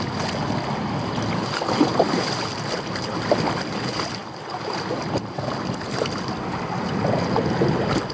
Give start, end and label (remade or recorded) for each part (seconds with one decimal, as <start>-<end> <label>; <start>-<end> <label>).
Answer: 0.0-4.2 recorded; 4.2-7.0 remade; 7.0-8.1 recorded